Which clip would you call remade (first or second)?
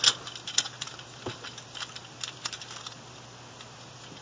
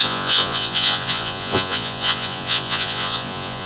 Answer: second